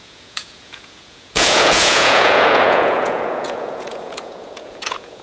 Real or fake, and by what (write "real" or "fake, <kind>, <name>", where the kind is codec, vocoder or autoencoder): fake, vocoder, Vocos